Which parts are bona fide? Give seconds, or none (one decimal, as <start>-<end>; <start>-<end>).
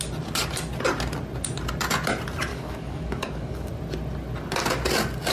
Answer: 0.0-2.5; 3.7-5.3